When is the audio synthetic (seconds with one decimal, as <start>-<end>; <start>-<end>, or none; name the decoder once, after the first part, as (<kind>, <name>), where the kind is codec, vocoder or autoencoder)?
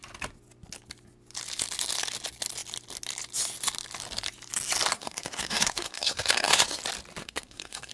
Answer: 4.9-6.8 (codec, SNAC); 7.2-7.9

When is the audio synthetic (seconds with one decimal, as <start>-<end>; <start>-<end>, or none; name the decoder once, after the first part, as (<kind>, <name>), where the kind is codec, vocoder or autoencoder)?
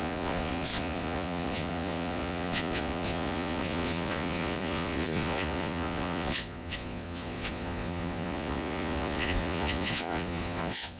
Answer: 0.0-11.0 (vocoder, Vocos)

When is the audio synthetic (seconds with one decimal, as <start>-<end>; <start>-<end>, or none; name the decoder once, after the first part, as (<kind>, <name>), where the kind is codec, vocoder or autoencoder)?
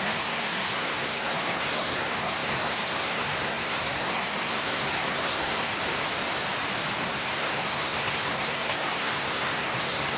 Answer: 0.0-5.7 (codec, SNAC); 7.0-10.2